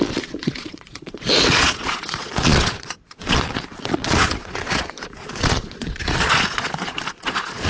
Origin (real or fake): fake